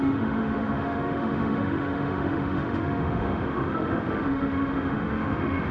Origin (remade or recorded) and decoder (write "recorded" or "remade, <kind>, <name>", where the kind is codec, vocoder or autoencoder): remade, autoencoder, DAC-VAE